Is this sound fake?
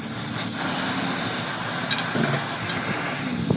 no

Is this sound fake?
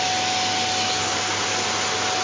no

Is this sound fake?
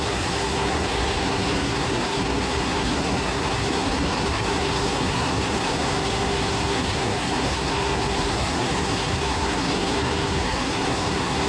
yes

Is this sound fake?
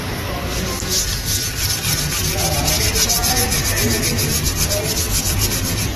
no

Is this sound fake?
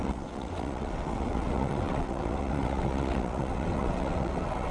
yes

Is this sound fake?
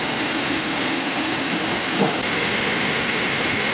yes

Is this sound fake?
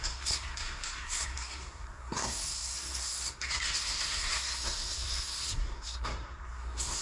yes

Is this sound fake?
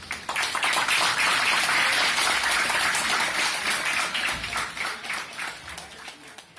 no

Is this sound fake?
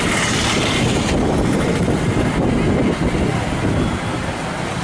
no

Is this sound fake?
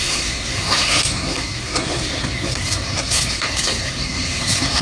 yes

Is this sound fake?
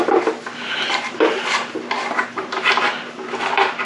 no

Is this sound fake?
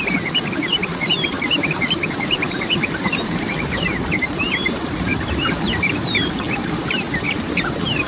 yes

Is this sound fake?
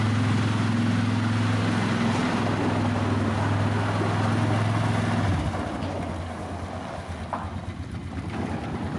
no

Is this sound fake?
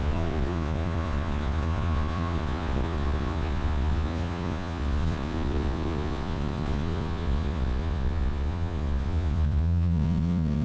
yes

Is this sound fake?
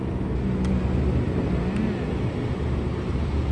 no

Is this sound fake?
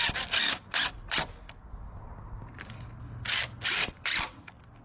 no